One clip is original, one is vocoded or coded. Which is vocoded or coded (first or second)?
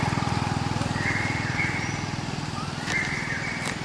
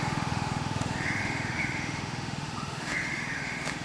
second